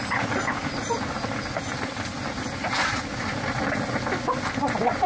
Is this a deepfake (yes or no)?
no